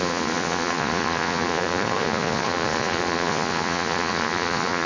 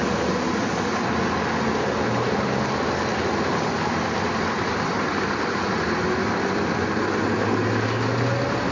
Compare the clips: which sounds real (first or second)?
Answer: second